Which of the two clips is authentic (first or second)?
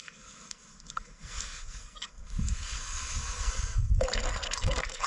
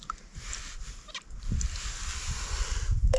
second